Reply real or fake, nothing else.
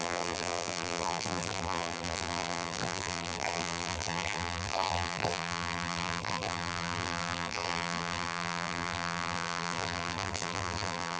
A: fake